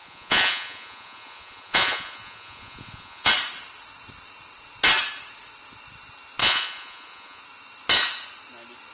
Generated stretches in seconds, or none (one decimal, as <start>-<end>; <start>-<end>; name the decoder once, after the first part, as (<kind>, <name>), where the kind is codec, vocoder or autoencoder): 0.0-3.3 (vocoder, Vocos); 6.4-7.4